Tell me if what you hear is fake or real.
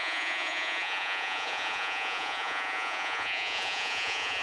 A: fake